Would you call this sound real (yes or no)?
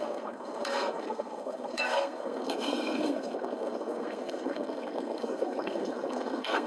no